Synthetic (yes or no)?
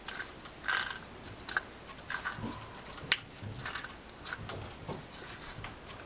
no